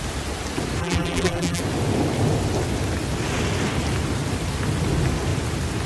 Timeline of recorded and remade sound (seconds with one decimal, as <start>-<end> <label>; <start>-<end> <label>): 0.0-0.8 recorded; 0.8-1.6 remade; 1.6-5.9 recorded